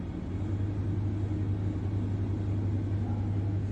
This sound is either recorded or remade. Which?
recorded